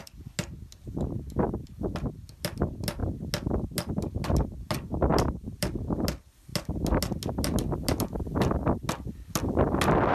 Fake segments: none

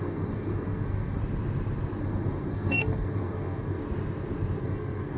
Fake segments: 0.0-1.2 (codec, SNAC); 2.0-3.8; 4.6-5.2

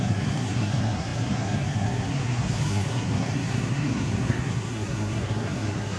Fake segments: 0.0-6.0 (codec, SNAC)